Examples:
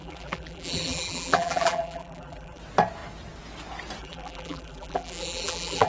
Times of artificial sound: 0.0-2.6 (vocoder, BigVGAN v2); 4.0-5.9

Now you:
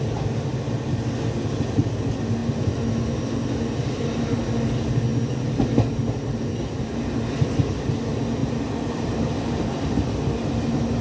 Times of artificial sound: 8.4-9.9 (vocoder, BigVGAN v2)